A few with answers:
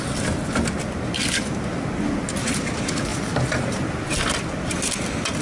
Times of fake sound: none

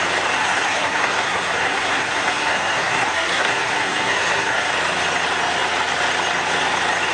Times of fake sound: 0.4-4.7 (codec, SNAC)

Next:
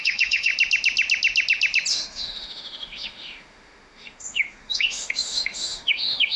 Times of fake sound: 0.0-0.5 (autoencoder, DAC-VAE); 1.9-6.4